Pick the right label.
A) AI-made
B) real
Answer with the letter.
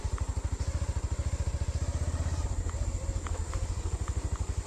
B